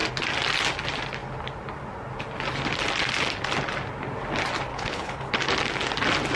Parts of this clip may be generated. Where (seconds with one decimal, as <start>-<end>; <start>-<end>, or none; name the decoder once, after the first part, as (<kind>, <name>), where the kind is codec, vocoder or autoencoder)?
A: 4.7-5.3 (codec, HILCodec)

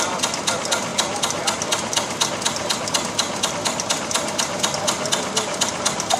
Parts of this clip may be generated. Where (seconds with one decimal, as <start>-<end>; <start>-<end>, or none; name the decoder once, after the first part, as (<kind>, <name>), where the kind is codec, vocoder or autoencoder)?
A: none

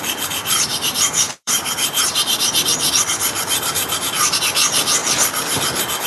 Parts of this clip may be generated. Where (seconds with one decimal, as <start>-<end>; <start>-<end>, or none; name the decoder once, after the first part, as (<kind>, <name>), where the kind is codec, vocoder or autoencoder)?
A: 0.7-4.4 (vocoder, BigVGAN v2)

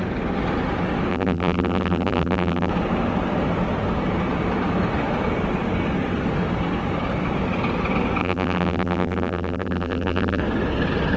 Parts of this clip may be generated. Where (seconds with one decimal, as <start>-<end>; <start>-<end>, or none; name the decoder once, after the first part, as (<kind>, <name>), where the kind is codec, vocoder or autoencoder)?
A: 1.1-2.7 (vocoder, BigVGAN v2); 8.2-10.4

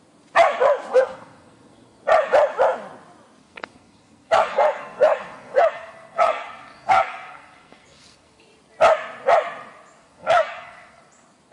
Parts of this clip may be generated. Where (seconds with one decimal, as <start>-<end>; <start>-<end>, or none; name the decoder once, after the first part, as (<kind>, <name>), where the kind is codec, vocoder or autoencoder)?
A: 0.9-2.0 (codec, SNAC); 3.4-8.4; 10.0-11.0

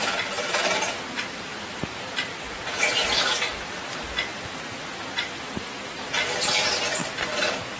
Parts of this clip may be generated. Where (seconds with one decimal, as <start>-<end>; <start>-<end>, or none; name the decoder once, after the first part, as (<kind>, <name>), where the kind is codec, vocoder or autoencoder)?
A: 0.0-1.9 (vocoder, BigVGAN v2); 7.0-7.8

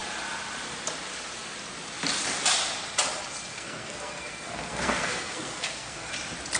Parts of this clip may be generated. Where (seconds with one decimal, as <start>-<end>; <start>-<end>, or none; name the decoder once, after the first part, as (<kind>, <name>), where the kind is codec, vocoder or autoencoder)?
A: 3.5-6.1 (codec, SNAC)